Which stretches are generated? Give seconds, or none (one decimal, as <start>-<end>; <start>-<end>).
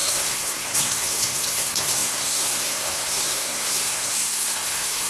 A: 0.0-5.1